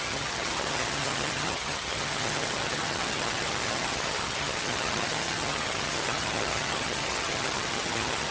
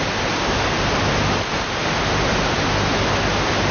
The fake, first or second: first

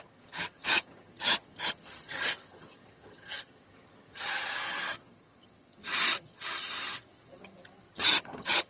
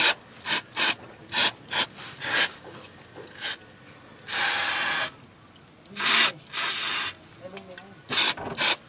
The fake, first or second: first